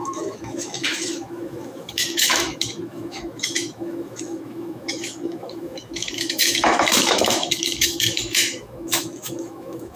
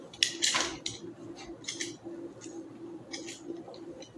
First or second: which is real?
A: second